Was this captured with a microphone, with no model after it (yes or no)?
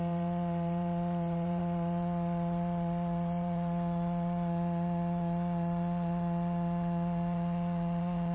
no